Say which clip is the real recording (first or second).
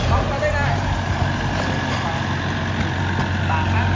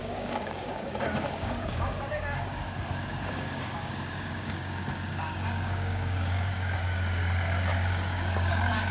first